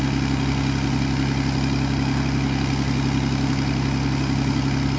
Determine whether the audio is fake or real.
real